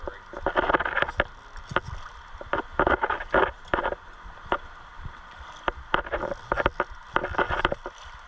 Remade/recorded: recorded